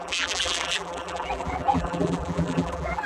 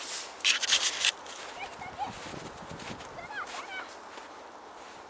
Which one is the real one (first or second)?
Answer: second